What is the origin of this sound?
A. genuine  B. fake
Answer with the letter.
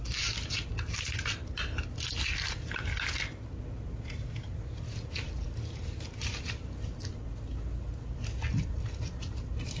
A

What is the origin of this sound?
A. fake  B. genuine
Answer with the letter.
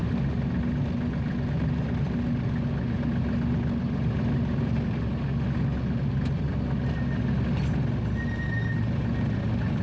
B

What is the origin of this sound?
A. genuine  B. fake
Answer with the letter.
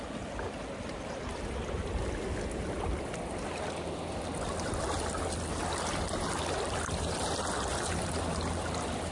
A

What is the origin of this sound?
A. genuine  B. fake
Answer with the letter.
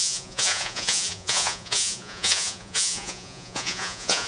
B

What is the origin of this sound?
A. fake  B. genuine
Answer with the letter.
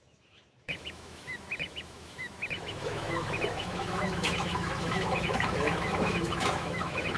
A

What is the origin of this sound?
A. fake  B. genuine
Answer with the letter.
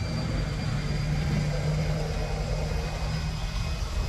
B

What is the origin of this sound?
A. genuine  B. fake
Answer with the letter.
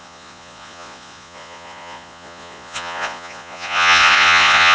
B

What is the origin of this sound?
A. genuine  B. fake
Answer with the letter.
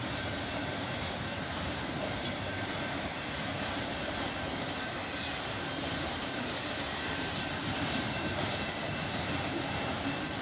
B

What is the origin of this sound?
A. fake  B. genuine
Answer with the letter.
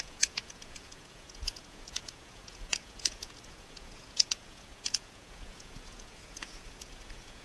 A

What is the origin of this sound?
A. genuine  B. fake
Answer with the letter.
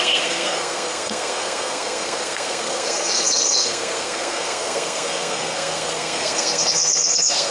B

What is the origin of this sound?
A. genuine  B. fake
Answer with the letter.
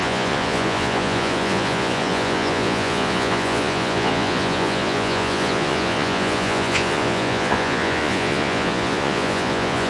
B